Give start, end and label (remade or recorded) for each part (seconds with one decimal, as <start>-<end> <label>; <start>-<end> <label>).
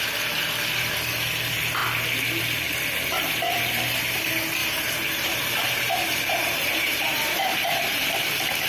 0.0-4.6 recorded; 4.6-8.1 remade; 8.1-8.7 recorded